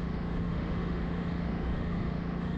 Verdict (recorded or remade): remade